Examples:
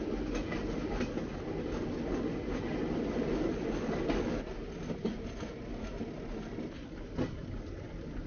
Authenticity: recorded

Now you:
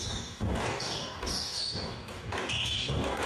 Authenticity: remade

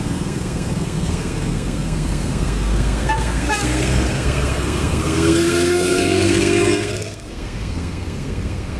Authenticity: remade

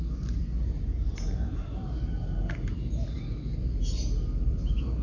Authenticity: recorded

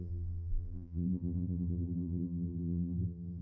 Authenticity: remade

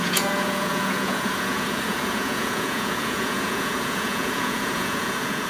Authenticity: remade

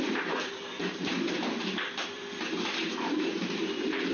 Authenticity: remade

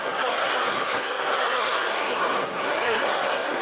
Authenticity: remade